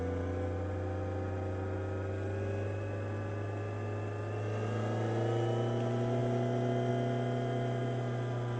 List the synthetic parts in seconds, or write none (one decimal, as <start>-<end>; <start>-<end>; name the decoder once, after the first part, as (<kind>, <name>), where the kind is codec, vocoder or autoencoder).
none